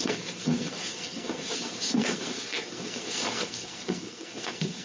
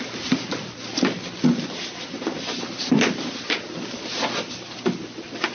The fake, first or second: first